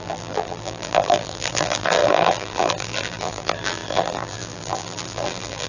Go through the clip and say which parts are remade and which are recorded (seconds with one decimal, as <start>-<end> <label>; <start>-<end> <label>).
0.0-5.7 remade